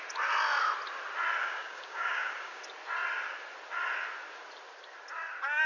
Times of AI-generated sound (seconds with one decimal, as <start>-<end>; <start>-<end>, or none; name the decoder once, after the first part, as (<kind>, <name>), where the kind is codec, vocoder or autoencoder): 1.4-2.6 (codec, DAC)